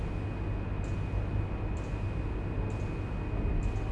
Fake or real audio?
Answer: real